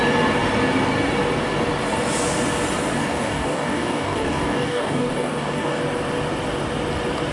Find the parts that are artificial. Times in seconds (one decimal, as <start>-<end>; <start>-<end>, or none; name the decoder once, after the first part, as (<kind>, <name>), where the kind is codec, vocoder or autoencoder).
3.0-5.8 (codec, DAC)